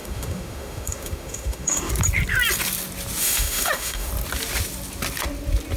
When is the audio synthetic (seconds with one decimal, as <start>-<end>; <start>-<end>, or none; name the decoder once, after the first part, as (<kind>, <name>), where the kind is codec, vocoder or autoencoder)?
0.0-1.9 (autoencoder, DAC-VAE); 3.2-4.1